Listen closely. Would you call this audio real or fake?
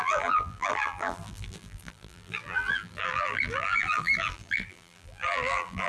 fake